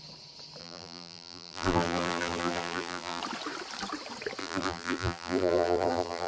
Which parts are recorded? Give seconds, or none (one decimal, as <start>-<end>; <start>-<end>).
0.0-0.6; 3.2-4.4